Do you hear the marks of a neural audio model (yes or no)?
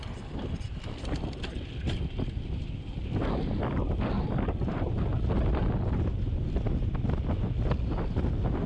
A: no